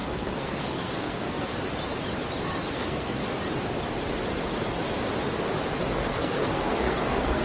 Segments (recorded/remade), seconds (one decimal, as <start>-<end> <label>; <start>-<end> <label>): 0.0-1.5 remade; 1.5-2.7 recorded; 2.7-3.2 remade; 3.2-5.8 recorded; 5.8-7.4 remade